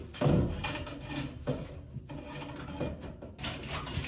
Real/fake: real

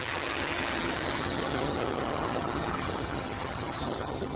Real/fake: fake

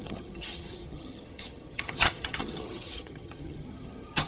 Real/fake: fake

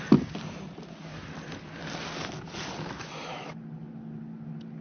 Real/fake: real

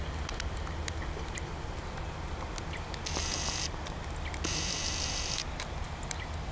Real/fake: real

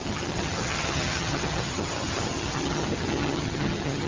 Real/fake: fake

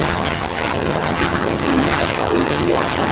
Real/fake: fake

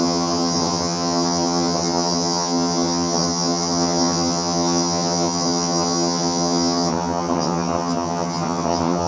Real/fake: fake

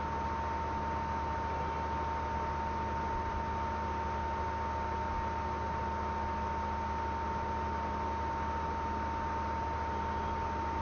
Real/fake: real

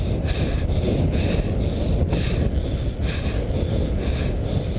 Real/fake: real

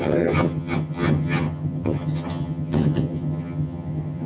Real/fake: fake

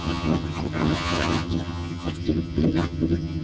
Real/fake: fake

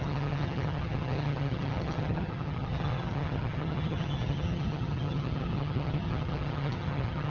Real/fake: fake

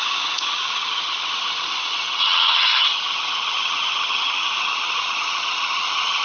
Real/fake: fake